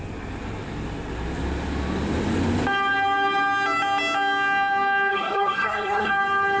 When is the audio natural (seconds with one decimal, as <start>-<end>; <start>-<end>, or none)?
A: 0.0-5.1; 6.1-6.6